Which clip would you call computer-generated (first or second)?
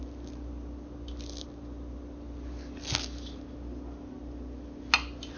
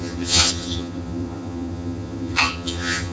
second